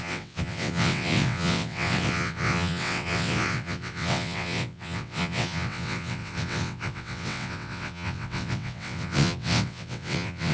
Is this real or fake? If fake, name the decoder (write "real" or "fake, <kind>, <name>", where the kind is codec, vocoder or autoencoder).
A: fake, vocoder, WaveNeXt